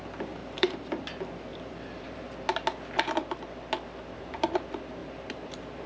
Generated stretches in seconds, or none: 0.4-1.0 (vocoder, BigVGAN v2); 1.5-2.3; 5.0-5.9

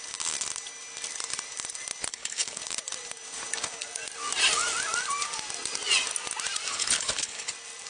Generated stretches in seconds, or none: 2.1-2.6 (codec, HILCodec); 6.7-7.5

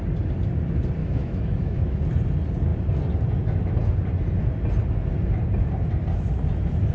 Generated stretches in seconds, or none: 1.0-2.0 (autoencoder, DAC-VAE)